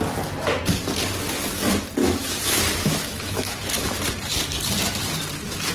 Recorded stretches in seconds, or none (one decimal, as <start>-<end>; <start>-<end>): 0.0-2.0; 4.0-5.7